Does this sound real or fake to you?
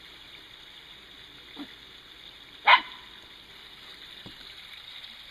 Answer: real